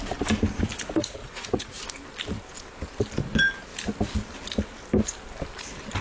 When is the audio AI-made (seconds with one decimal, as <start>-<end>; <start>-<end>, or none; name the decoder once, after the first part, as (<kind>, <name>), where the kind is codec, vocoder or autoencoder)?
1.2-1.9 (vocoder, Vocos)